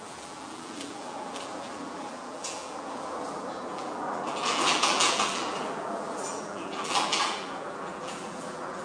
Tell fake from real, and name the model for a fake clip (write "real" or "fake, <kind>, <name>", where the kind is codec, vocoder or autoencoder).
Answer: fake, vocoder, BigVGAN v2